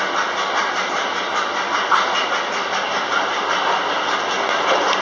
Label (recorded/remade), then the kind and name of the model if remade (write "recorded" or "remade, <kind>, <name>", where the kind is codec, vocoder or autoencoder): recorded